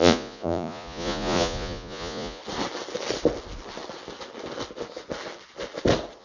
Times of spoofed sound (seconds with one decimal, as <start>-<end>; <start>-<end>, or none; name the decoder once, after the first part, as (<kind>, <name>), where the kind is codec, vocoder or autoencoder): 0.0-2.4 (vocoder, Vocos)